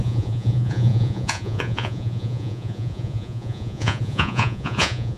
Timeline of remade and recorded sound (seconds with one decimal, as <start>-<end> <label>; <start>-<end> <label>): 0.0-5.2 remade